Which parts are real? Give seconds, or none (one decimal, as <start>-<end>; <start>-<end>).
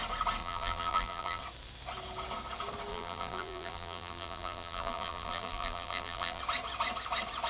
0.0-0.4; 1.4-2.9; 6.4-7.5